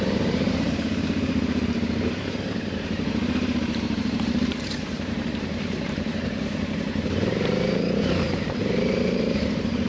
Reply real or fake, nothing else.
fake